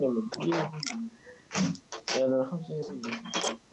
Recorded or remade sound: recorded